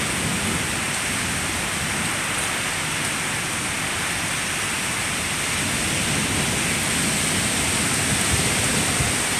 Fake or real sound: real